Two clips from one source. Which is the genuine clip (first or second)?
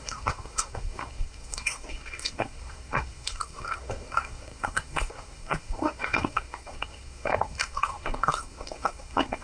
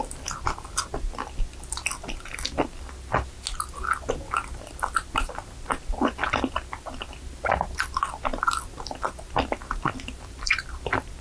second